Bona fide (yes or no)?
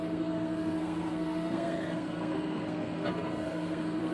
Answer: no